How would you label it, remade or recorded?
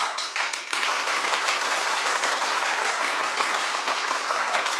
remade